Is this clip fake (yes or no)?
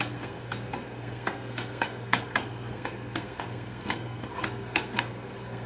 yes